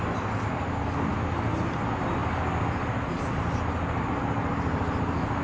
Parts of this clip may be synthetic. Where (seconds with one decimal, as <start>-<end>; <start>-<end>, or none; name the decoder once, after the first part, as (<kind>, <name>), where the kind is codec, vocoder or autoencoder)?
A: none